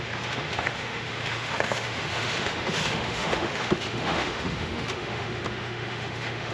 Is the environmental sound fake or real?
fake